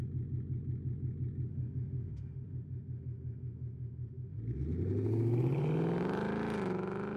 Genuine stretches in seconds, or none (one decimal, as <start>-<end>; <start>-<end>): 0.0-1.5; 4.4-7.2